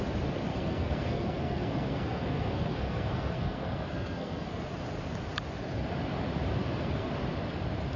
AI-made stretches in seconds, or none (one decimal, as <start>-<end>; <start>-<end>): 0.5-4.6; 6.6-7.1